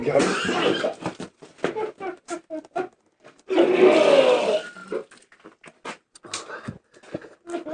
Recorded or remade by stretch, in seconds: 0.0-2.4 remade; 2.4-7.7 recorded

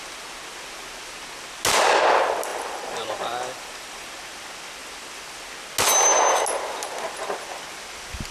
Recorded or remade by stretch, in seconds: 0.0-2.5 recorded; 2.5-4.1 remade; 4.1-8.3 recorded

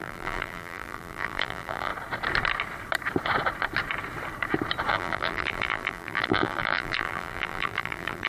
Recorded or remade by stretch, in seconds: 0.0-1.9 remade; 1.9-4.9 recorded; 4.9-8.3 remade

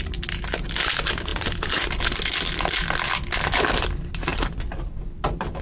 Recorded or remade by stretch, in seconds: 0.0-4.3 recorded; 4.3-5.6 remade

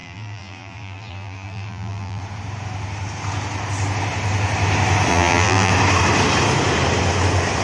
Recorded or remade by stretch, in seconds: 0.0-2.2 remade; 2.2-5.1 recorded; 5.1-5.7 remade; 5.7-7.6 recorded